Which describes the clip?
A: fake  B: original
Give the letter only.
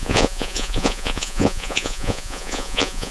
A